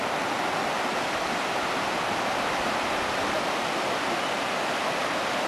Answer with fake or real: real